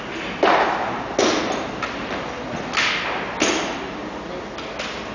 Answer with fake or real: real